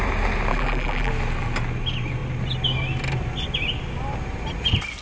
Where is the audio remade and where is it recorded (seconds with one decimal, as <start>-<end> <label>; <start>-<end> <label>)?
0.0-0.5 recorded; 0.5-1.1 remade; 1.1-5.0 recorded